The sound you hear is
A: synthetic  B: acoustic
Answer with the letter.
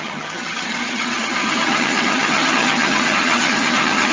A